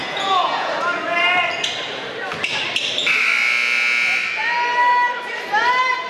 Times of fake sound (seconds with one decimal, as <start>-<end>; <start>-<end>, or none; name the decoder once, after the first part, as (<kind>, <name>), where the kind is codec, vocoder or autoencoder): 0.0-0.7 (vocoder, Vocos)